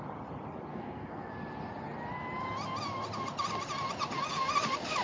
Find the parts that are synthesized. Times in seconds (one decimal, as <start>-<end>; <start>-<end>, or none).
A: 0.7-1.3

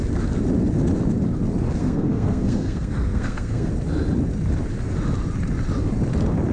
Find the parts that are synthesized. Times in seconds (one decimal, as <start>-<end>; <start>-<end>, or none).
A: 1.8-3.7

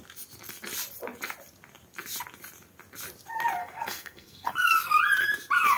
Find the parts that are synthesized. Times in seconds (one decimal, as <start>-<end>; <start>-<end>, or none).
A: 3.6-5.0

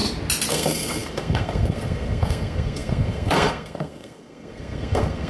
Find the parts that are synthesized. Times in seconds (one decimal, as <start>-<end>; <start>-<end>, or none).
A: 0.5-5.3

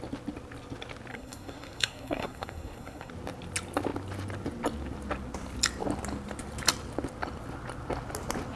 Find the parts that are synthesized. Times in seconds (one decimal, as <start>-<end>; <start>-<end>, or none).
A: 1.1-3.1

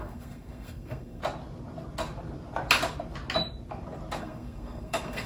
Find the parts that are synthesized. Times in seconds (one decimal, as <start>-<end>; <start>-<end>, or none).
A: 0.0-1.2; 4.2-5.3

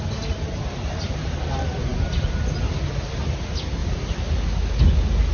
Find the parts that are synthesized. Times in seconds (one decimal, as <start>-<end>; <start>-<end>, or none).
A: none

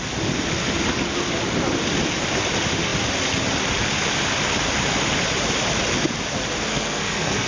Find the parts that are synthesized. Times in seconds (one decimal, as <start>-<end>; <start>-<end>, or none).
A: 6.7-7.5